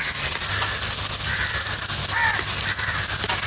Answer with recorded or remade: recorded